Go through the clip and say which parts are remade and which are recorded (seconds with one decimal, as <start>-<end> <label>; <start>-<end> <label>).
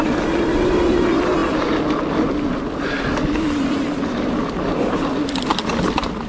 0.0-6.3 recorded